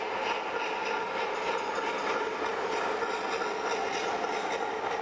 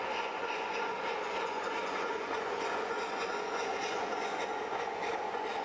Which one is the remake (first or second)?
second